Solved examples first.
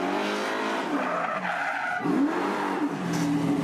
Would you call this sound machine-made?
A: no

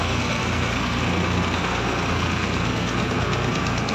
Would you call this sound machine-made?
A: yes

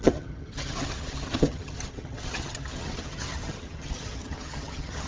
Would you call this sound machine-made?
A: yes